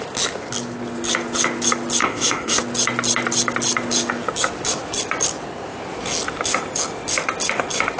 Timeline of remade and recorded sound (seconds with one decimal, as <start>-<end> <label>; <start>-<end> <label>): 0.0-2.0 recorded; 2.0-2.6 remade; 2.6-8.0 recorded

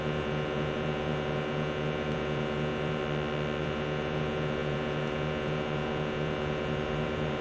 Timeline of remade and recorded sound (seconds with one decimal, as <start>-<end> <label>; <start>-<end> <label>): 0.0-3.0 remade; 3.0-3.6 recorded; 3.6-7.4 remade

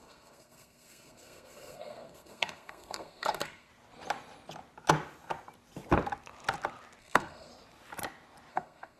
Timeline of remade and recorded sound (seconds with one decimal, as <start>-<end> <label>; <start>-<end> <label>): 0.0-3.7 remade; 3.7-7.0 recorded; 7.0-7.5 remade; 7.5-8.5 recorded; 8.5-9.0 remade